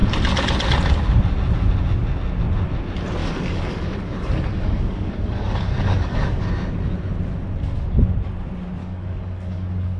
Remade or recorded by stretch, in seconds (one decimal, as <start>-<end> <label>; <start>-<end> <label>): 0.0-3.2 recorded; 3.2-6.5 remade; 6.5-8.8 recorded; 8.8-10.0 remade